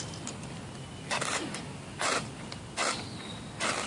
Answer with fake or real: real